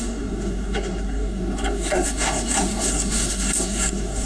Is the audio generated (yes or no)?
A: yes